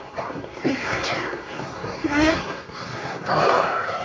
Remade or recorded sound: remade